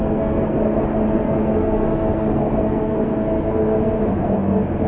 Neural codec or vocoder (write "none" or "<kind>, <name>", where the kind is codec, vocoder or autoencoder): codec, SNAC